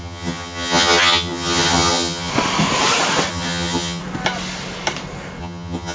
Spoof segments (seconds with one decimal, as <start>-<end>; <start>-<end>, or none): 0.0-2.3; 3.3-4.0; 5.4-5.9